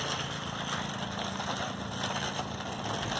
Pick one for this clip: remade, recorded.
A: recorded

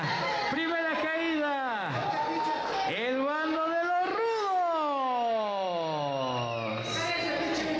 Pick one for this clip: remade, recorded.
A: recorded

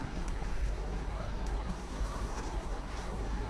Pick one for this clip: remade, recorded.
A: remade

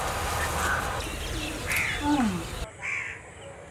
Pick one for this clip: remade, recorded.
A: recorded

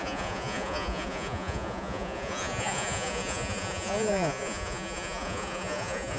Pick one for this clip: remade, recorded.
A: remade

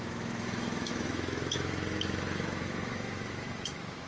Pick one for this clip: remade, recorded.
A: remade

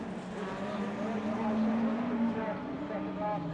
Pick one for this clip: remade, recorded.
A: recorded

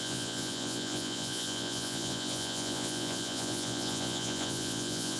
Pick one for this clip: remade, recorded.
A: remade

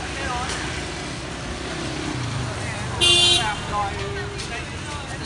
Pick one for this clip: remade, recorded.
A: recorded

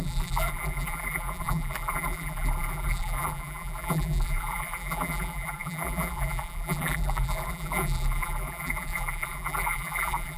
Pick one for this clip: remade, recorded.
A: remade